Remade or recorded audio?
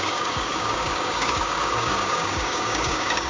remade